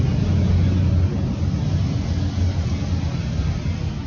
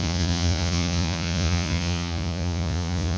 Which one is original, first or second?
first